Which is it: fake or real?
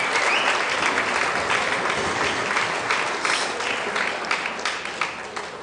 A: real